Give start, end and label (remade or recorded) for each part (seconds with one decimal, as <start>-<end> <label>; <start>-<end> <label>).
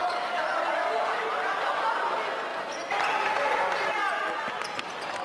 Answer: 0.0-5.2 recorded